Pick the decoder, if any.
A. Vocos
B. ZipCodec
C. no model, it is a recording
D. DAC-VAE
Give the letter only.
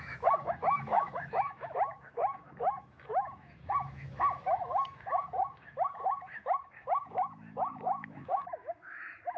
D